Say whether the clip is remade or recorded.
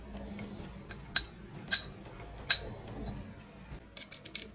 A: recorded